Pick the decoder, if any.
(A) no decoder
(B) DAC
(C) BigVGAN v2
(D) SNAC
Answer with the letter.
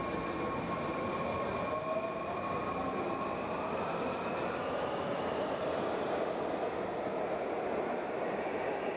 A